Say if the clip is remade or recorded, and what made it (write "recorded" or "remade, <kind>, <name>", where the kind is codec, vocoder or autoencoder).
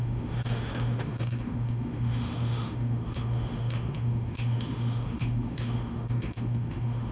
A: remade, autoencoder, DAC-VAE